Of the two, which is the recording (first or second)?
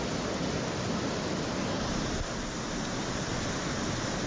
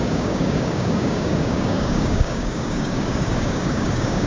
first